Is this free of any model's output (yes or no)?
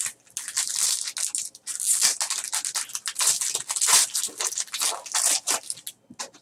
yes